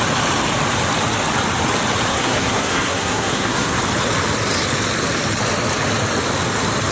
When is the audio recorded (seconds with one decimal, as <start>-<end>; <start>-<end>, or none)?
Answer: 0.0-2.1; 3.8-6.9